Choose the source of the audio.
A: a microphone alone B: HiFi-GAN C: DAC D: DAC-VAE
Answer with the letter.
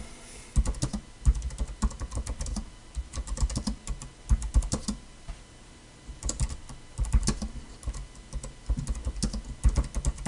A